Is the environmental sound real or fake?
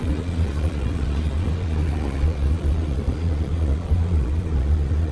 fake